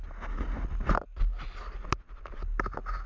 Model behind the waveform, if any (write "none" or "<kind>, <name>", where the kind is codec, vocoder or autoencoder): none